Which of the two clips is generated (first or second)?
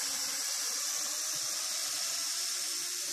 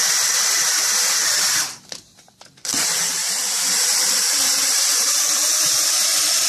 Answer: second